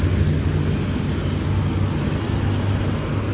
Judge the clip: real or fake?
real